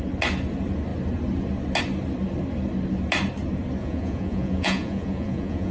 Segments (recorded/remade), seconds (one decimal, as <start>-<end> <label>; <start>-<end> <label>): 0.0-3.8 recorded; 3.8-5.7 remade